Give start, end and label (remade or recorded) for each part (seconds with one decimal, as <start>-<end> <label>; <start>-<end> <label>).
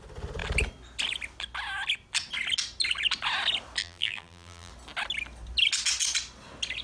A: 0.0-3.8 recorded; 3.8-4.7 remade; 4.7-6.8 recorded